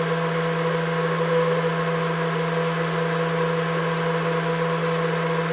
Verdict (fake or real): real